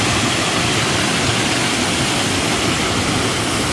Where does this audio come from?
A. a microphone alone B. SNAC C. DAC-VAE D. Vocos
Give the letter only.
A